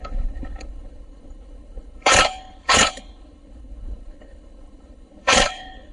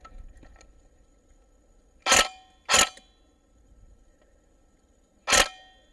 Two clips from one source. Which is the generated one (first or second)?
first